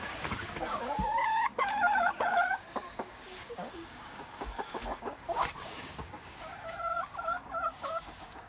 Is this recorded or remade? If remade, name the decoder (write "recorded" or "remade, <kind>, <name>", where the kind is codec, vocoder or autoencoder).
remade, codec, DAC